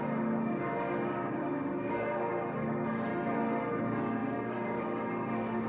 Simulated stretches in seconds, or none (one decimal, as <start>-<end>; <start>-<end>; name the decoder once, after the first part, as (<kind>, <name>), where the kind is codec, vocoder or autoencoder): 0.0-3.1 (codec, DAC); 3.8-5.7